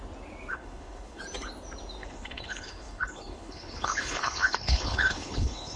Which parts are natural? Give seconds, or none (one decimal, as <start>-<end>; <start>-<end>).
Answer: 0.0-0.5; 1.2-2.0

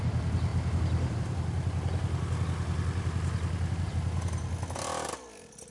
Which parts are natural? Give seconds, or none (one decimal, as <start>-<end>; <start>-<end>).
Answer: 0.0-5.7

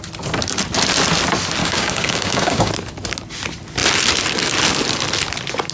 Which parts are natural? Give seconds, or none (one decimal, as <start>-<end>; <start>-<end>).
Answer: 0.0-1.6; 2.7-5.7

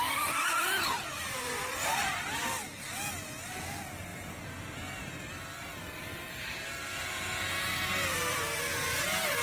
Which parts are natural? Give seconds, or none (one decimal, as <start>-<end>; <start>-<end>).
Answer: 0.0-9.4

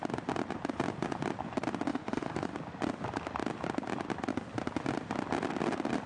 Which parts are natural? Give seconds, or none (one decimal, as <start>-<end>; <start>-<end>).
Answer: 0.0-1.9; 2.5-6.1